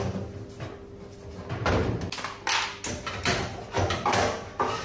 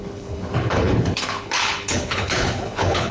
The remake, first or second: second